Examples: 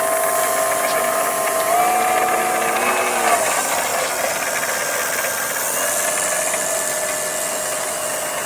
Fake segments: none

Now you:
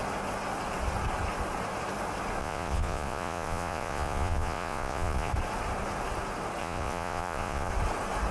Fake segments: 2.4-5.3 (vocoder, Vocos); 6.6-7.7

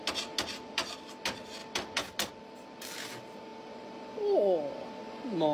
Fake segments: none

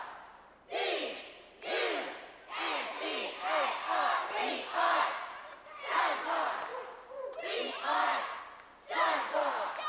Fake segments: 4.4-6.0 (vocoder, Vocos); 6.7-8.4

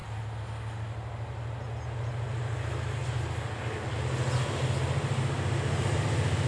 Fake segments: none

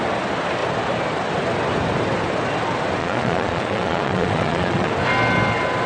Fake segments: 3.0-4.9 (vocoder, Vocos)